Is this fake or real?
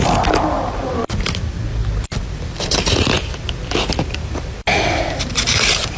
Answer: real